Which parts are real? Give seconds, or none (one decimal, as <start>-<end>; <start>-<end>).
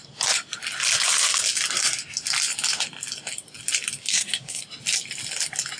0.0-4.1; 4.6-5.8